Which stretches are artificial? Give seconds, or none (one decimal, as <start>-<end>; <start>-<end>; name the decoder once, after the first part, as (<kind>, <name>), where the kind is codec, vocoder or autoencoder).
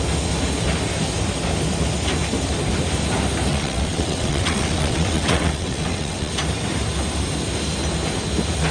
3.5-6.3 (vocoder, WaveNeXt)